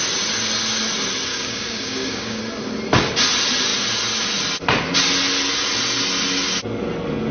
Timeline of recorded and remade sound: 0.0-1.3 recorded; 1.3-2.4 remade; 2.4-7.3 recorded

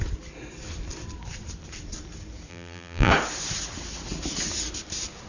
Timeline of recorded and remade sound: 0.0-2.5 recorded; 2.5-3.1 remade; 3.1-5.3 recorded

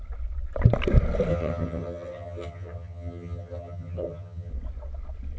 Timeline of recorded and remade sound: 0.0-1.3 recorded; 1.3-4.5 remade; 4.5-5.4 recorded

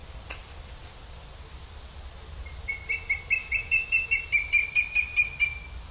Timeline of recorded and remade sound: 0.0-3.4 recorded; 3.4-4.1 remade; 4.1-5.9 recorded

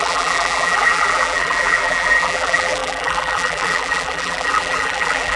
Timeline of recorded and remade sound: 0.0-5.4 remade

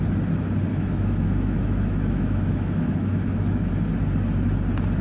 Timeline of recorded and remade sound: 0.0-0.7 recorded; 0.7-3.7 remade; 3.7-5.0 recorded